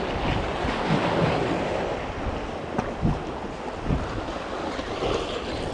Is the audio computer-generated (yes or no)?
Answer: no